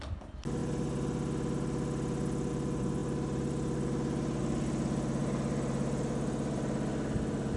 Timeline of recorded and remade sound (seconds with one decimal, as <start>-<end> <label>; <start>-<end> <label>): 0.0-7.6 recorded